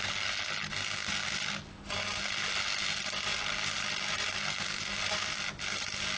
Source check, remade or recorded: recorded